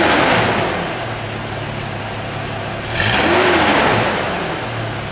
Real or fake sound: real